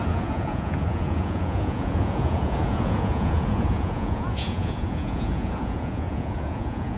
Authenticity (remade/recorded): remade